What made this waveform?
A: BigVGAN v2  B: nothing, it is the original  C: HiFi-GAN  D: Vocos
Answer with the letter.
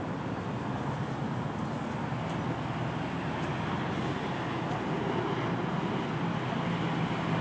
B